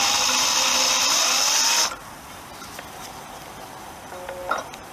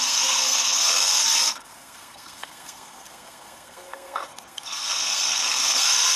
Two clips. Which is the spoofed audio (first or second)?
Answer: second